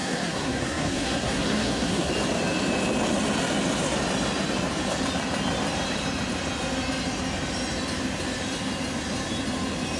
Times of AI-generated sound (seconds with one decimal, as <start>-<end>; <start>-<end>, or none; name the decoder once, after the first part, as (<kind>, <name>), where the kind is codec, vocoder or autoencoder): 0.0-2.1 (codec, SNAC)